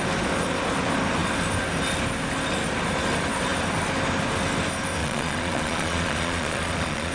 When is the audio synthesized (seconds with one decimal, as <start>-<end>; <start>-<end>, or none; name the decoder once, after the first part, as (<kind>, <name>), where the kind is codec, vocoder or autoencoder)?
5.0-7.1 (vocoder, Vocos)

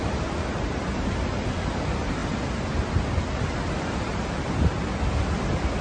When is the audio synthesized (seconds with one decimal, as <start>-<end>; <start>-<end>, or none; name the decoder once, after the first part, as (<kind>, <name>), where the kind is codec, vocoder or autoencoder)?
none

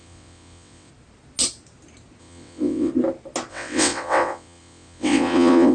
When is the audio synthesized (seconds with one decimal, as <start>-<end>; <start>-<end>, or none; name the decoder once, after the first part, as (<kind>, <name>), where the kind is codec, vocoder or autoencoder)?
0.0-0.9 (vocoder, WaveNeXt); 2.2-2.9; 3.5-5.7